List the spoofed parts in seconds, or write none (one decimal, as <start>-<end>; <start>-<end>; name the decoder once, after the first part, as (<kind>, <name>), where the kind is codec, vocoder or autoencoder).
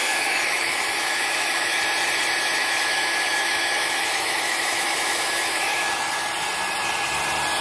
0.0-1.8 (autoencoder, DAC-VAE); 2.6-5.9